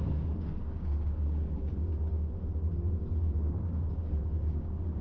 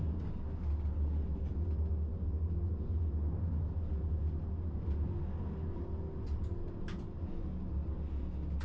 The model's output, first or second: first